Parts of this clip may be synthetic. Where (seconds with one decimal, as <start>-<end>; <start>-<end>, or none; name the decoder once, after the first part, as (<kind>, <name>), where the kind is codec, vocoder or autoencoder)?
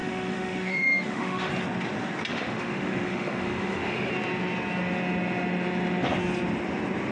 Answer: 0.0-1.5 (autoencoder, DAC-VAE); 2.3-4.1